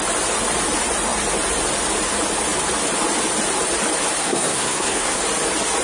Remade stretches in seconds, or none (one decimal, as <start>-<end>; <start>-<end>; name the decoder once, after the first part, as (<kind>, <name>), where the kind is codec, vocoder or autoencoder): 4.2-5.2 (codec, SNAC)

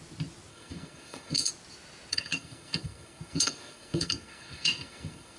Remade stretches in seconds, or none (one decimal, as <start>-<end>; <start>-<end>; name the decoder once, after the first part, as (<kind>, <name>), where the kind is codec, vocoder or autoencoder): 0.5-1.5 (codec, SNAC); 2.1-5.4

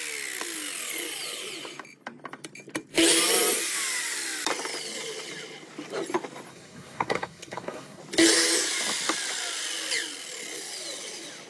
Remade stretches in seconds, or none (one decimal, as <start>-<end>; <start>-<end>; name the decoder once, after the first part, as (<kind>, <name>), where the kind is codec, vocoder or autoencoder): 6.5-8.0 (codec, SNAC)

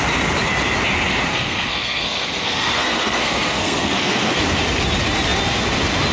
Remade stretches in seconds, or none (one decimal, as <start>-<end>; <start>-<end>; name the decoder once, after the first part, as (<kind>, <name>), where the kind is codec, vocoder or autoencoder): 1.3-4.4 (codec, SNAC)

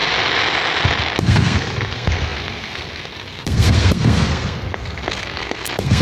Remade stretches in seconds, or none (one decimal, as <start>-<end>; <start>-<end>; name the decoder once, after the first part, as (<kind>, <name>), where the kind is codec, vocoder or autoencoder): 1.2-6.0 (codec, SNAC)

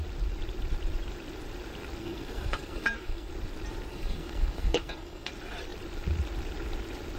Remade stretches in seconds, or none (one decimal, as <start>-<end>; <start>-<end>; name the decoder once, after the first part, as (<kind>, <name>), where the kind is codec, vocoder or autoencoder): 2.0-3.3 (codec, SNAC); 3.9-5.3

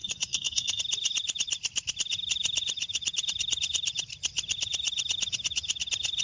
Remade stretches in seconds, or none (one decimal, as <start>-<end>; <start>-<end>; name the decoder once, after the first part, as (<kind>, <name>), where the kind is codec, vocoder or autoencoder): 0.0-0.8 (codec, SNAC)